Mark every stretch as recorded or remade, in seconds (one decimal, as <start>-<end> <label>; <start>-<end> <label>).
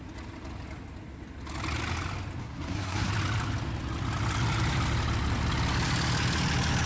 0.0-2.4 recorded; 2.4-3.1 remade; 3.1-6.9 recorded